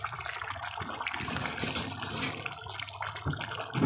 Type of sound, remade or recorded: recorded